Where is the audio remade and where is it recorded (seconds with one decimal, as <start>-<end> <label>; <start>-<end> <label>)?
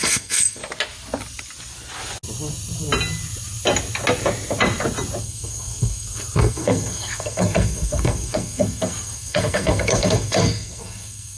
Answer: 0.0-0.6 remade; 0.6-5.2 recorded; 5.2-11.4 remade